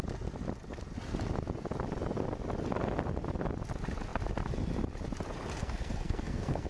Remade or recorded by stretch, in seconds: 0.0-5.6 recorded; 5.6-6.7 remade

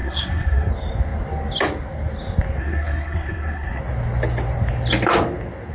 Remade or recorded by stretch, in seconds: 0.0-0.7 remade; 0.7-2.6 recorded; 2.6-3.8 remade; 3.8-5.7 recorded